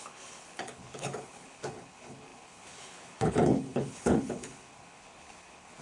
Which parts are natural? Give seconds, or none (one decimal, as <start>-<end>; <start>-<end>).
none